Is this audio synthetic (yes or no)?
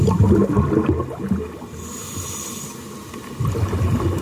no